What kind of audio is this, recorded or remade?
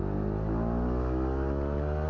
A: recorded